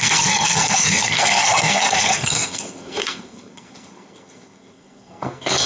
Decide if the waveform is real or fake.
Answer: fake